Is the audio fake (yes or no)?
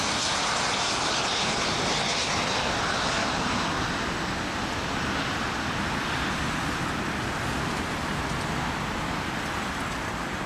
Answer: no